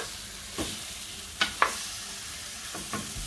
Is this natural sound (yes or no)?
yes